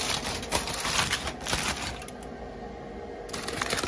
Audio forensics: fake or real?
real